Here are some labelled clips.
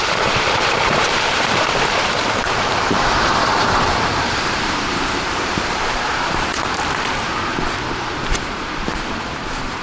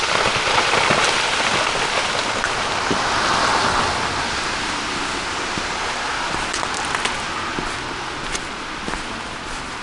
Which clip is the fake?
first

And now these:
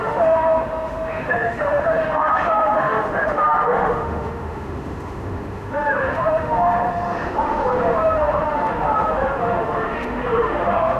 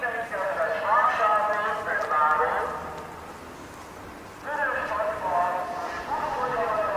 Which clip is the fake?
first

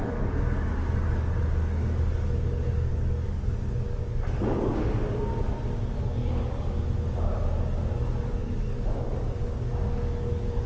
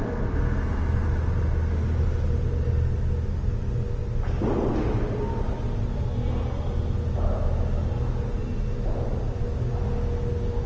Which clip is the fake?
first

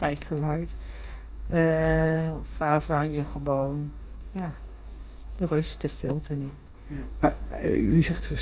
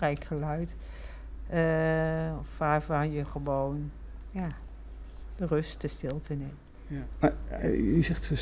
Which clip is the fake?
first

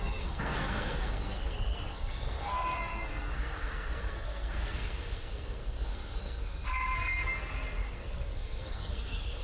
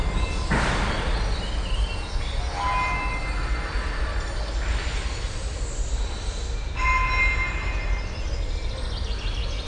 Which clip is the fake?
first